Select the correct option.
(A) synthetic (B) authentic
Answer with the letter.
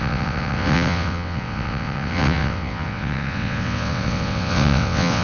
A